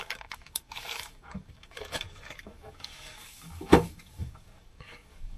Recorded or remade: remade